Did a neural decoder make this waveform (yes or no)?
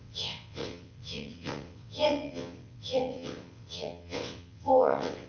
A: yes